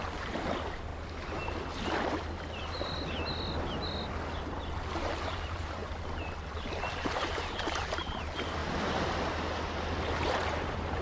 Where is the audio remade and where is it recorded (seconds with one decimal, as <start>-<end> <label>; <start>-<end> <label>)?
0.0-0.9 remade; 0.9-4.4 recorded; 4.4-5.8 remade; 5.8-6.5 recorded; 6.5-8.6 remade; 8.6-10.3 recorded; 10.3-11.0 remade